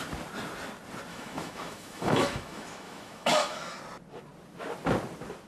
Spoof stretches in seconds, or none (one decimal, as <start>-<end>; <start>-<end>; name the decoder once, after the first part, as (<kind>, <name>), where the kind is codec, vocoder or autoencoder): 1.1-3.8 (autoencoder, DAC-VAE)